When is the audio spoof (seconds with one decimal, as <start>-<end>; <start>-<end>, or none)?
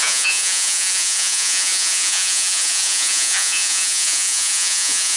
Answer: 0.0-5.2